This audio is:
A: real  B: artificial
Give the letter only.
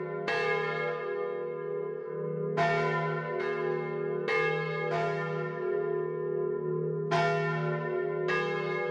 A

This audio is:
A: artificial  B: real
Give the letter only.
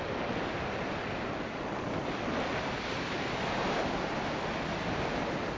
B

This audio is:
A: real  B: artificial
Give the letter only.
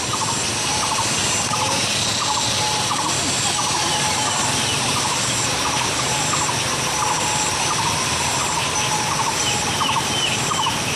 A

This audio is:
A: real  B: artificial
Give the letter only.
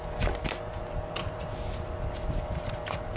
A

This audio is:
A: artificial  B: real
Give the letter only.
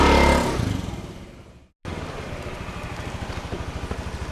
B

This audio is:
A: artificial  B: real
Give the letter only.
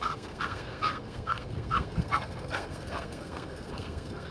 A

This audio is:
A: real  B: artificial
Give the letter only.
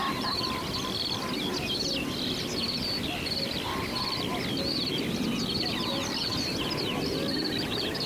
A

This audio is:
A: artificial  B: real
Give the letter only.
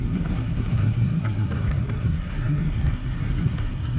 A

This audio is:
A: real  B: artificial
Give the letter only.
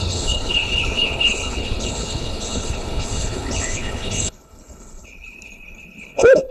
B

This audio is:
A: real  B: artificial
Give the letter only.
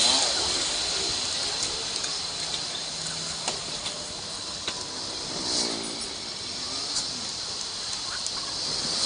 A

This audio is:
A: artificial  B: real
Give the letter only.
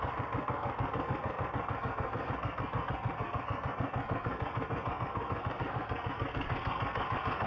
A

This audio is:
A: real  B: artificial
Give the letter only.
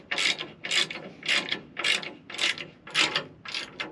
A